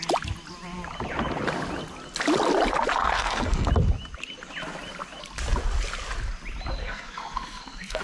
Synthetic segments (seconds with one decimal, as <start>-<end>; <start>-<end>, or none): 3.0-3.7; 6.8-8.0